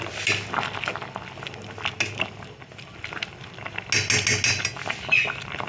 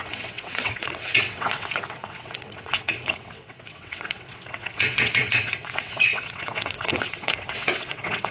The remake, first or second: second